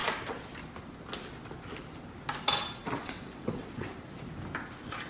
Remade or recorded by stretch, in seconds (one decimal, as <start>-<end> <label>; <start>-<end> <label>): 0.0-3.0 recorded; 3.0-3.9 remade; 3.9-5.1 recorded